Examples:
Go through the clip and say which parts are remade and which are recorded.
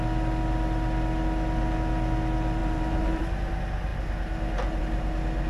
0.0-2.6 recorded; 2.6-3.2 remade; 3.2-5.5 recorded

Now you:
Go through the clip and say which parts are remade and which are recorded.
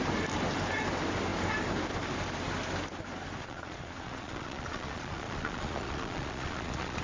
0.0-3.4 recorded; 3.4-7.0 remade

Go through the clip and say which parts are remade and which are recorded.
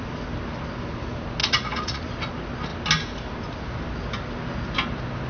0.0-1.4 recorded; 1.4-2.0 remade; 2.0-5.3 recorded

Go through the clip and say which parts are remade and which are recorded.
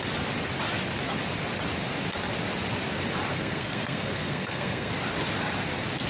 0.0-3.3 recorded; 3.3-4.9 remade; 4.9-6.1 recorded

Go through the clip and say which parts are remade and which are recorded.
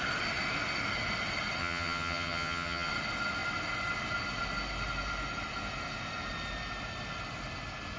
0.0-1.6 recorded; 1.6-2.9 remade; 2.9-8.0 recorded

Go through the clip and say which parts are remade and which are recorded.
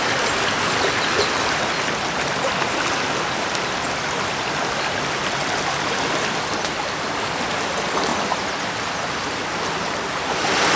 0.0-10.8 recorded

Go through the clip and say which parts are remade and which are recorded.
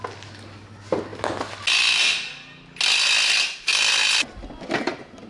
0.0-5.3 recorded